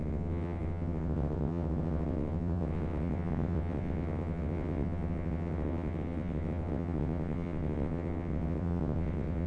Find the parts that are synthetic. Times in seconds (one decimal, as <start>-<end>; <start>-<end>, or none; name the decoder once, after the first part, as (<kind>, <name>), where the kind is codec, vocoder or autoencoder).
0.0-9.5 (vocoder, WaveNeXt)